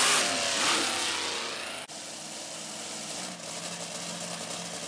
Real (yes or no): yes